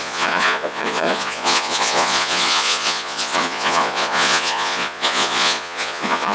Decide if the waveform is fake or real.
fake